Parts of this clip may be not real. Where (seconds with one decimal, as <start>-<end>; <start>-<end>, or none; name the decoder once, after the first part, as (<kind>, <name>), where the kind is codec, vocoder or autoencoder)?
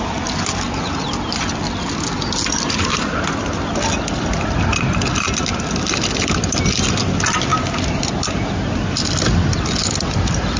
none